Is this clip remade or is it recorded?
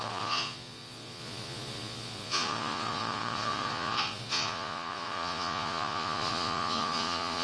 remade